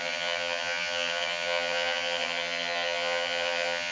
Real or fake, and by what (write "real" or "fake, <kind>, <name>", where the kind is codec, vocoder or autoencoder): fake, vocoder, HiFi-GAN